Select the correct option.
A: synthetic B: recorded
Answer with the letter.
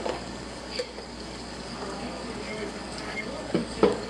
A